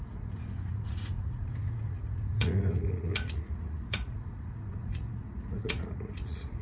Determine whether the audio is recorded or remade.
remade